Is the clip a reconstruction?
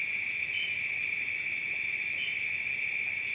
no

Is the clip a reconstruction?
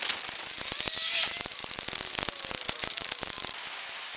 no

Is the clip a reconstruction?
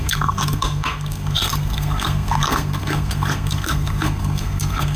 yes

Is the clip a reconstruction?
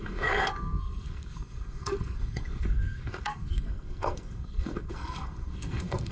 yes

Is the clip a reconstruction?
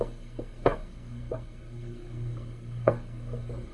yes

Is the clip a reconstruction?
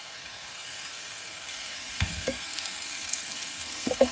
yes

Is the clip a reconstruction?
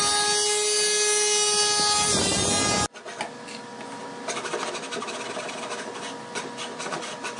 no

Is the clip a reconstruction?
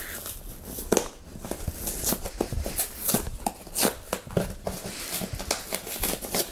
no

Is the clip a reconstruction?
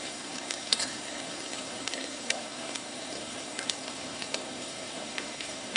yes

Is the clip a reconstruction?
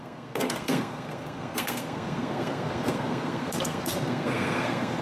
yes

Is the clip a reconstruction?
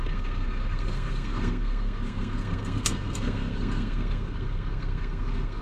yes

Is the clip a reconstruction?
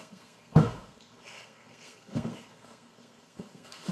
yes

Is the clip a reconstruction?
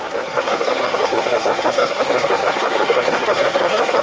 yes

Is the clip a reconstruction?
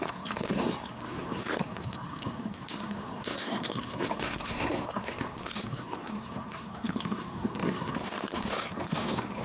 yes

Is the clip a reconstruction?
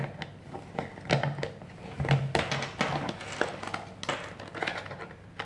no